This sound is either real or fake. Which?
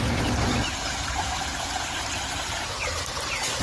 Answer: fake